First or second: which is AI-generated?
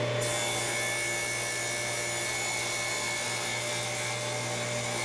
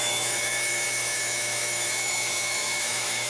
second